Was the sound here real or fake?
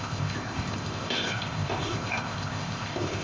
fake